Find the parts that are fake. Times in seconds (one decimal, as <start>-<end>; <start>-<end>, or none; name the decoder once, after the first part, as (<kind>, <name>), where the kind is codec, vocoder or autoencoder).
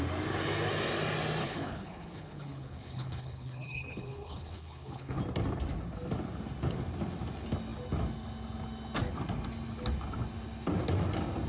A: 1.4-5.2 (codec, HILCodec)